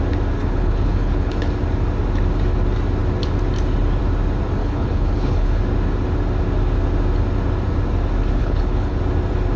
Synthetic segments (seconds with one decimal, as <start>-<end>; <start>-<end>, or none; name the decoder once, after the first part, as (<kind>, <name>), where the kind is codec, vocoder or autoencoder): 0.4-1.5 (codec, HILCodec); 4.6-5.6; 8.4-9.0